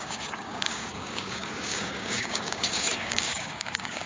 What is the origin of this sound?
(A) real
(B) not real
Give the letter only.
B